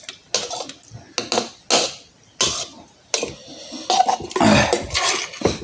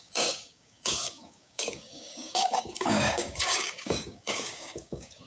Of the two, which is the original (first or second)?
first